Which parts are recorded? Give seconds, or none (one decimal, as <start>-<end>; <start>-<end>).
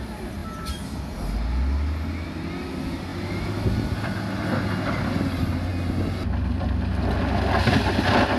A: 0.0-8.4